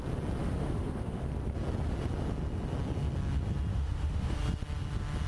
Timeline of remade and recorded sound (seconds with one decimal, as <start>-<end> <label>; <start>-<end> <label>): 0.0-0.4 recorded; 0.4-1.2 remade; 1.2-3.7 recorded; 3.7-4.4 remade; 4.4-5.3 recorded